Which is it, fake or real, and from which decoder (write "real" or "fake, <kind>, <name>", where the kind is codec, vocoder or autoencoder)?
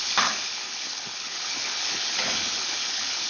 fake, codec, HILCodec